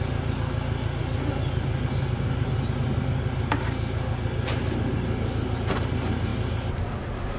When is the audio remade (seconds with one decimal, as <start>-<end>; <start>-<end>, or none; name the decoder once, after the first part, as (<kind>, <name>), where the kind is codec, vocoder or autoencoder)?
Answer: none